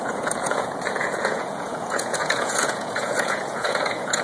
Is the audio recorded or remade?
remade